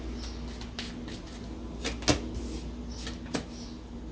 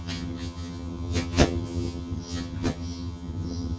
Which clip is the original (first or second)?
first